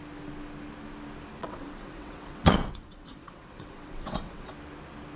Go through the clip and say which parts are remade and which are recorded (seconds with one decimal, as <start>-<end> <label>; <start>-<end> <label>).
0.0-1.4 recorded; 1.4-4.5 remade; 4.5-5.2 recorded